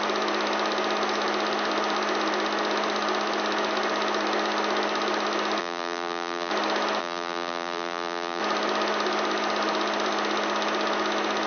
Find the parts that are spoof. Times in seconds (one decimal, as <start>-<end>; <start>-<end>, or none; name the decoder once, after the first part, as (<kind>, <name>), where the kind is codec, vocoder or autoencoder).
5.6-6.5 (vocoder, BigVGAN v2); 7.0-8.4